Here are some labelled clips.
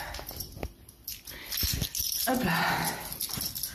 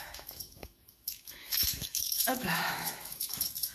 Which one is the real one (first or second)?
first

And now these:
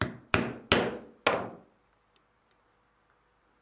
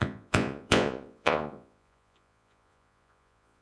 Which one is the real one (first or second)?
first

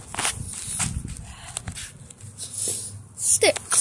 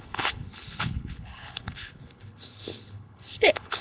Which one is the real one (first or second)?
first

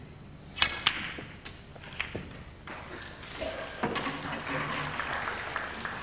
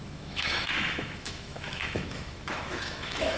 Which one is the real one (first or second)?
first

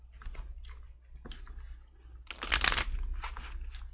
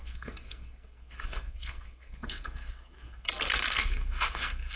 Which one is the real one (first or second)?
first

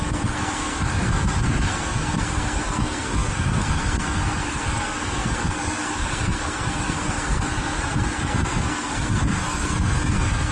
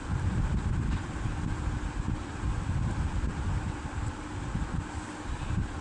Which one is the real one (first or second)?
second